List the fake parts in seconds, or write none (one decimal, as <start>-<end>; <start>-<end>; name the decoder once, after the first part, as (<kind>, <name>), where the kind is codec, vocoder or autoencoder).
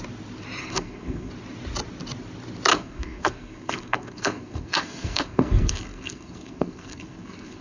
0.6-1.3 (codec, SNAC); 2.7-7.6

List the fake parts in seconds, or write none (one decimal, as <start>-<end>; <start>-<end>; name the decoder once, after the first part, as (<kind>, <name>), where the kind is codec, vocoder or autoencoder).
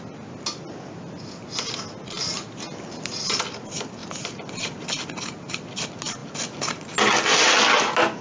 none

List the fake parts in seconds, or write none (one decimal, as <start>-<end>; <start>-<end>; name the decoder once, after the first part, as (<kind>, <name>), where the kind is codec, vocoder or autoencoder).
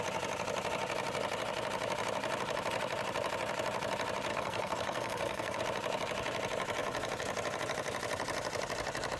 4.3-5.6 (codec, SNAC)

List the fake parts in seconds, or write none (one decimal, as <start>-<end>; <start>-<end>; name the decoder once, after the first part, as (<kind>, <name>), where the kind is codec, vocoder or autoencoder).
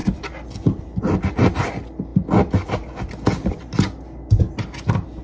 none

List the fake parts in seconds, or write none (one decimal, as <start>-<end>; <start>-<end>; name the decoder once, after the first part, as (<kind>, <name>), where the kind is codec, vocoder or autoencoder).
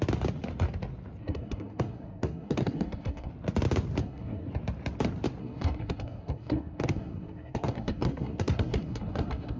1.2-3.3 (codec, SNAC); 4.0-4.5; 5.4-9.6